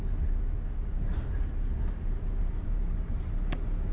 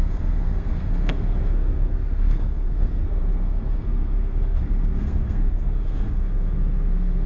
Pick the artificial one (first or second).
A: second